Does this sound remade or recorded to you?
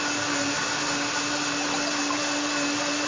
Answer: recorded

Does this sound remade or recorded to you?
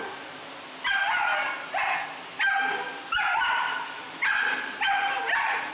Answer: recorded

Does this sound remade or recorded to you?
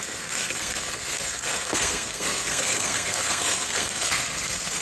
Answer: remade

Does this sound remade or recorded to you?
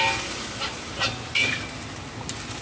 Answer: recorded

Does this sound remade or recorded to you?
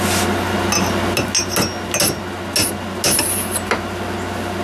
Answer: recorded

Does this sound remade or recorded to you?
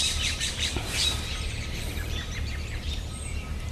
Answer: remade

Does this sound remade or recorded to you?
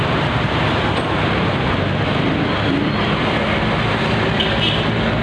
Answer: recorded